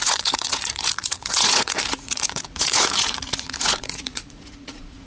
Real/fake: fake